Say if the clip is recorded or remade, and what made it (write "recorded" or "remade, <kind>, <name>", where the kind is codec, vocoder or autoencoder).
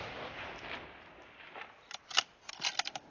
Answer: recorded